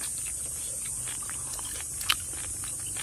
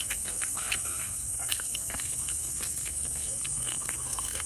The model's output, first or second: second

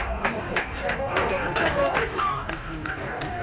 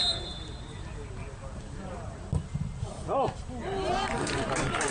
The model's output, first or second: first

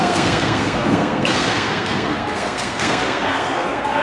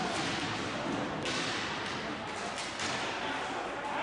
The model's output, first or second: first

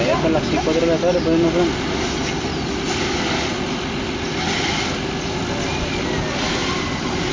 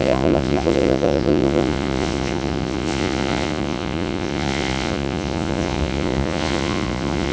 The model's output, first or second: second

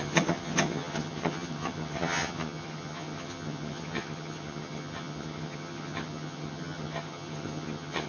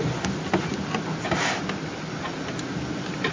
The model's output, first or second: first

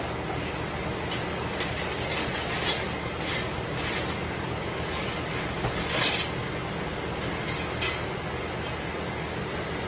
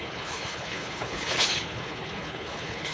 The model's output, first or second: second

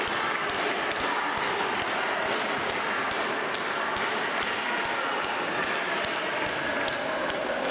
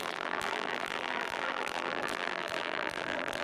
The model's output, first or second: second